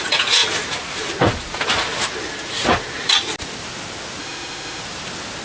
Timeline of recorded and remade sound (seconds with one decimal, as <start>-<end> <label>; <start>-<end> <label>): 0.0-4.2 recorded; 4.2-4.8 remade; 4.8-5.4 recorded